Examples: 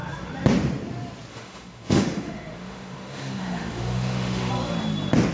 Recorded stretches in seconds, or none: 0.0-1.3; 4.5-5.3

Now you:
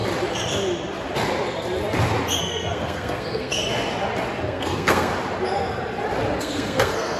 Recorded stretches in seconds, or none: 0.0-2.4; 3.6-4.4; 5.1-6.4

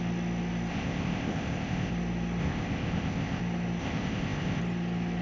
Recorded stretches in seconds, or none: 0.0-0.7; 1.9-2.4; 3.4-3.8; 4.6-5.2